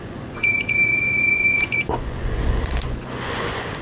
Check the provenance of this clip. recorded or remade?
remade